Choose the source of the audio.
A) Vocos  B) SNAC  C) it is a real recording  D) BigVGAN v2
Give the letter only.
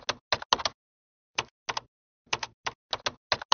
C